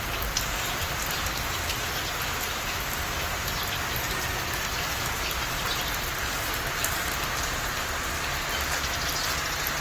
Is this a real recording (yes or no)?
yes